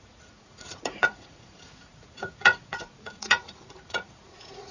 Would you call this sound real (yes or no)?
no